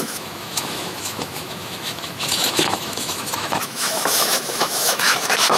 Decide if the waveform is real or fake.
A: fake